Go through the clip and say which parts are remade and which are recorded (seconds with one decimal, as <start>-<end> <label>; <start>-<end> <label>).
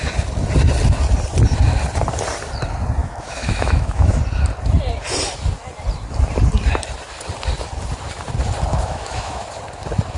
0.0-3.0 recorded; 3.0-4.2 remade; 4.2-8.7 recorded; 8.7-9.4 remade; 9.4-10.2 recorded